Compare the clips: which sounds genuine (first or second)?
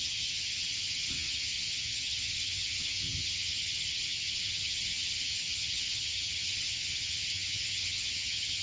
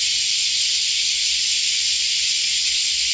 second